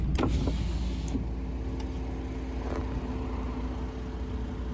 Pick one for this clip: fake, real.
real